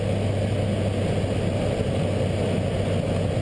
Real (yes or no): yes